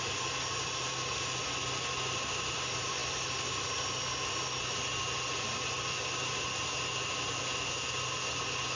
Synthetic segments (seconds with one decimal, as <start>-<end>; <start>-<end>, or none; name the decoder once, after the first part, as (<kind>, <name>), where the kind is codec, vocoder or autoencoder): none